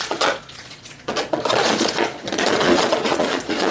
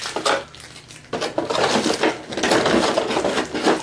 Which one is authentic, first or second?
second